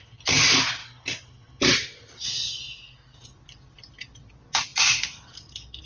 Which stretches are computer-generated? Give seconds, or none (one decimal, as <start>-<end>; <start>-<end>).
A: none